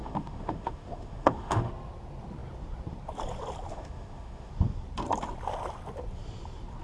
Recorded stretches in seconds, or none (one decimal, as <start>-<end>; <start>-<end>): 1.7-3.7; 4.5-6.8